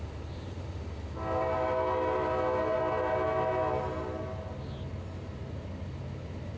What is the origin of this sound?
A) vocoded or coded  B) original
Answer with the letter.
B